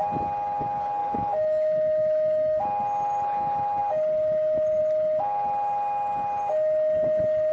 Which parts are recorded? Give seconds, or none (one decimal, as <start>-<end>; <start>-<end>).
0.0-1.0; 2.6-7.5